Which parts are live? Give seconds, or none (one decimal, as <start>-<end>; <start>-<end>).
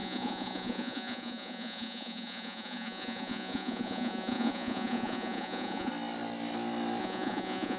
5.9-7.0